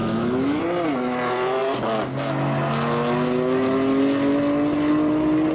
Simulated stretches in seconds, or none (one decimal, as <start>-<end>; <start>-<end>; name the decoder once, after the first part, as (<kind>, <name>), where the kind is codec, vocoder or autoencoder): 0.0-0.6 (autoencoder, DAC-VAE)